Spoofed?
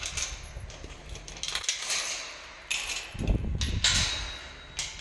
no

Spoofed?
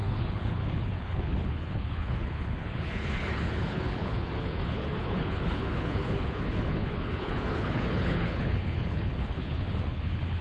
yes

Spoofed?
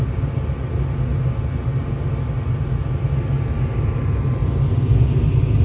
no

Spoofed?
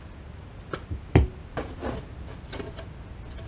no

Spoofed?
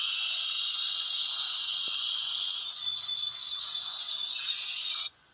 yes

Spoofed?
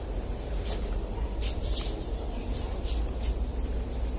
no